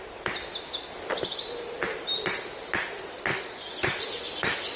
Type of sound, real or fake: real